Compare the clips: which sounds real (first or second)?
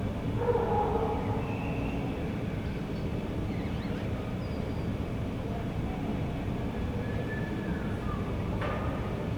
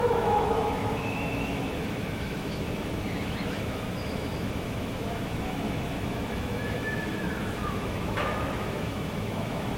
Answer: first